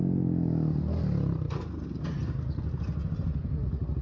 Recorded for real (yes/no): yes